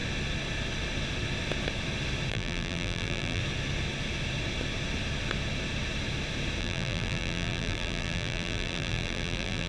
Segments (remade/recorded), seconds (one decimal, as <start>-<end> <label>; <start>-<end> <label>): 0.0-2.3 recorded; 2.3-3.4 remade; 3.4-6.6 recorded; 6.6-9.7 remade

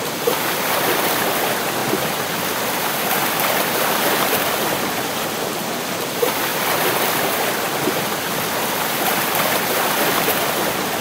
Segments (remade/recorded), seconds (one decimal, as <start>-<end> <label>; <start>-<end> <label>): 0.0-11.0 remade

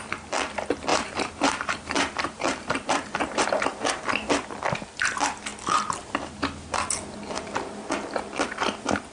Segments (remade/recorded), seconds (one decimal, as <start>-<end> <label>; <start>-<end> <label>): 0.0-0.9 recorded; 0.9-3.9 remade; 3.9-9.1 recorded